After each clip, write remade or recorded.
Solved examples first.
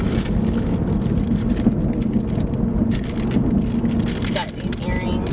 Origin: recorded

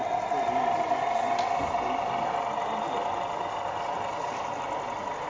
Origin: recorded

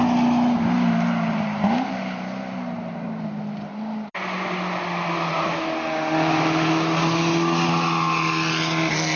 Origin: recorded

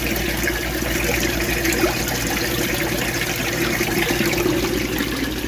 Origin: recorded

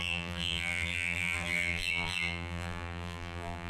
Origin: remade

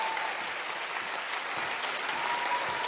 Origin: recorded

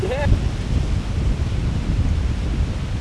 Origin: recorded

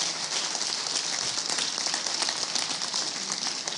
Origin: recorded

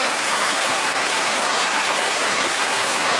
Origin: remade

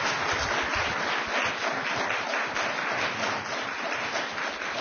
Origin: recorded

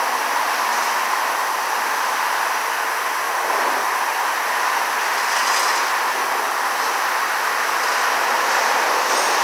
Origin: recorded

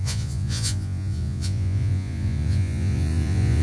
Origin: remade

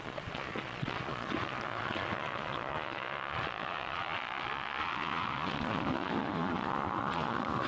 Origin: remade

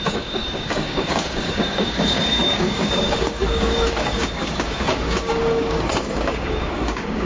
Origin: remade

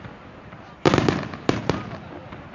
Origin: recorded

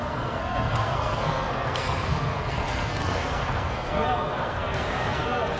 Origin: remade